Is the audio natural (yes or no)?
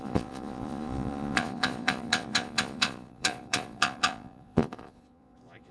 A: no